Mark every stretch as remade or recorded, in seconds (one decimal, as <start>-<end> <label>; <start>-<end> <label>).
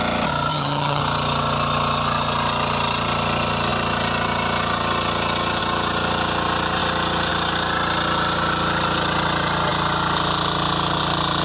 0.0-0.5 recorded; 0.5-1.0 remade; 1.0-11.4 recorded